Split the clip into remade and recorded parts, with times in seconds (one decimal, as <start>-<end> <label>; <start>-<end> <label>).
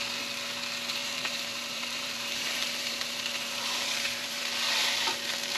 0.0-1.0 recorded; 1.0-4.4 remade; 4.4-5.6 recorded